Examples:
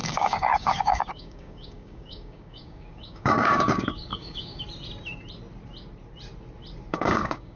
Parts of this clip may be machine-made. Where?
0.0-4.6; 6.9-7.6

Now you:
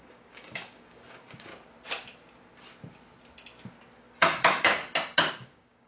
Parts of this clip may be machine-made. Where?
0.0-1.5; 4.0-4.8; 5.3-5.9

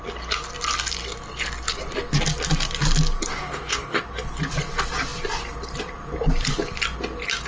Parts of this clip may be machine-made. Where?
3.3-4.0